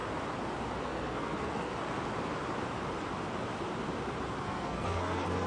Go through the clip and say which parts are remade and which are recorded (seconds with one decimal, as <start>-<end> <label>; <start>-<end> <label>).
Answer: 0.0-0.8 recorded; 0.8-1.7 remade; 1.7-4.4 recorded; 4.4-5.5 remade